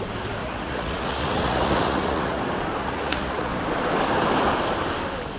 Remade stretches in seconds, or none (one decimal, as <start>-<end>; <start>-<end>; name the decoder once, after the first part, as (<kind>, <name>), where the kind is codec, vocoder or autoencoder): 0.4-2.4 (vocoder, Vocos); 2.8-3.5